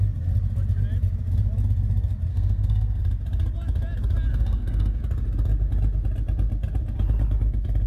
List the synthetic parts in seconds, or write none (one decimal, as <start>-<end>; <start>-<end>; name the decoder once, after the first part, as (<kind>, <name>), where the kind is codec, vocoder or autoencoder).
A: 2.3-3.0 (codec, SNAC); 4.3-5.0